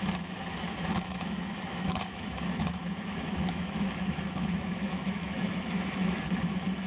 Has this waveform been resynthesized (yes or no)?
yes